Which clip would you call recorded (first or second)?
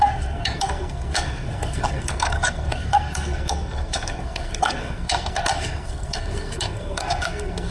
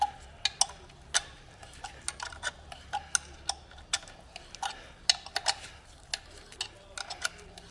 second